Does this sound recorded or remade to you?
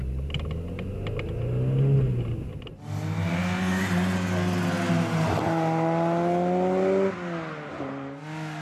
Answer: recorded